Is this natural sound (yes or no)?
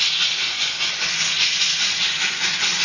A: no